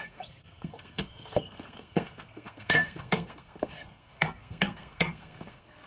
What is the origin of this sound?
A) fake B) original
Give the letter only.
A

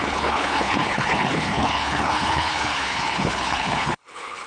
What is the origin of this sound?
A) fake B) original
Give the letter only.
A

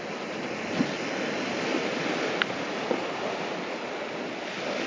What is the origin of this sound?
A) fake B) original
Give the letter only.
B